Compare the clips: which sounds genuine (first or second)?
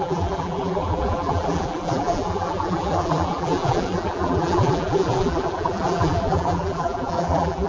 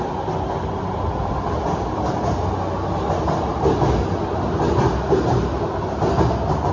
second